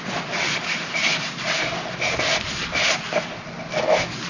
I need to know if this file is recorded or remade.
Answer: recorded